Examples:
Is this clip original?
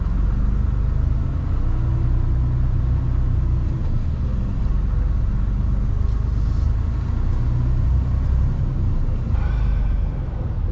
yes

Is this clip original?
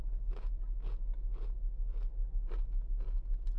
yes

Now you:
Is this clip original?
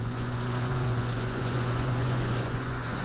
no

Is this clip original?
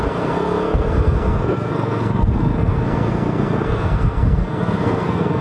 no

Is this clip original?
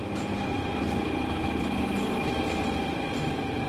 yes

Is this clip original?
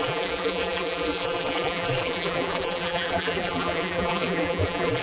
no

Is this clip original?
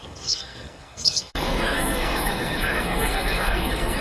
no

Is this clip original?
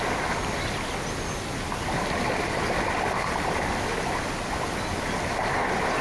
yes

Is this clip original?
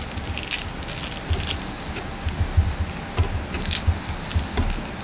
yes